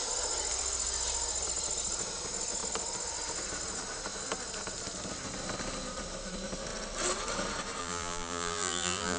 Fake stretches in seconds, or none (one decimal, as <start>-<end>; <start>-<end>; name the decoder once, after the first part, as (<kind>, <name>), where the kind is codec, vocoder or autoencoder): 7.8-9.2 (vocoder, BigVGAN v2)